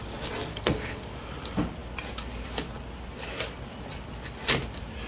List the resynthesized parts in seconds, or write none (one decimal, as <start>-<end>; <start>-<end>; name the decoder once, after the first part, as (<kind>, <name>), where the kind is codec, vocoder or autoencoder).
0.5-1.0 (codec, SNAC)